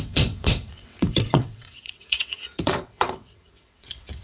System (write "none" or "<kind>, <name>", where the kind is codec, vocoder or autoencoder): vocoder, WaveNeXt